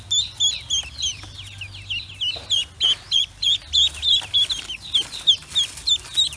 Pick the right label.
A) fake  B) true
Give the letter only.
B